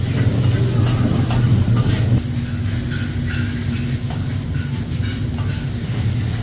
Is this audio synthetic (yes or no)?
no